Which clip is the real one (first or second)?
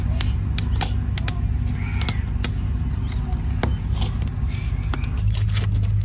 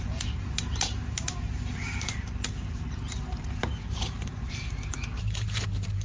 first